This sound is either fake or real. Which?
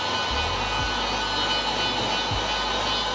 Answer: real